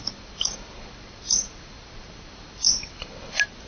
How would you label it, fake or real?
real